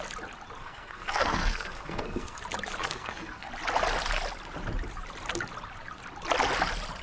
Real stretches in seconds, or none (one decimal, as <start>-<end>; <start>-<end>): 0.0-0.6; 2.4-2.8; 3.5-7.0